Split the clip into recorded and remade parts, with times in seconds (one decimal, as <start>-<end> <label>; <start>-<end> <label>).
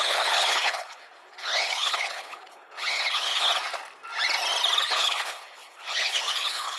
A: 0.0-3.5 remade; 3.5-4.9 recorded; 4.9-6.8 remade